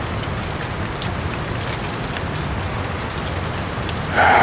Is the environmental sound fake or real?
real